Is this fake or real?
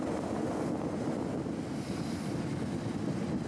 fake